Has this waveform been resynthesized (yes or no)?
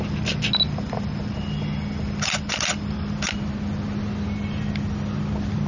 no